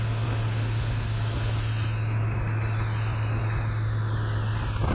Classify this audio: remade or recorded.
recorded